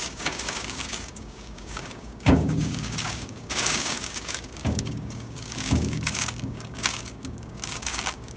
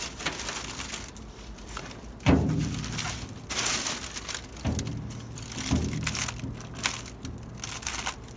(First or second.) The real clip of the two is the second